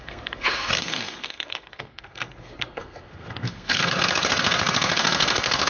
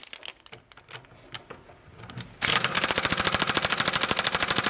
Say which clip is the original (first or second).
second